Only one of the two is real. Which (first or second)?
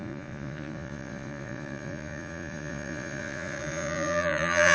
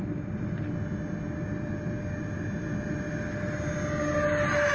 second